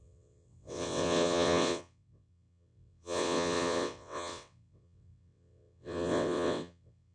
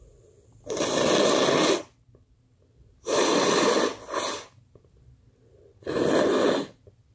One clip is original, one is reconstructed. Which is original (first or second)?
second